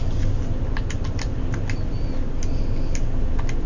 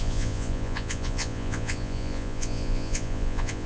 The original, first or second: first